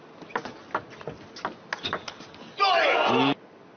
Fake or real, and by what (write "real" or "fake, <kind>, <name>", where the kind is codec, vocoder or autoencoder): real